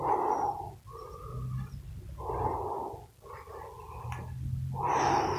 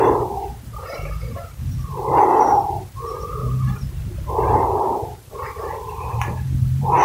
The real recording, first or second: first